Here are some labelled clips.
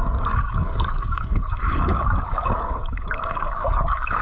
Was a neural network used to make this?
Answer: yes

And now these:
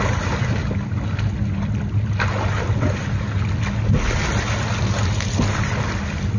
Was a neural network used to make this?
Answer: no